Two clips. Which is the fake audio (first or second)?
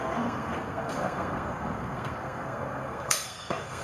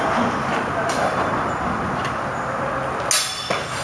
first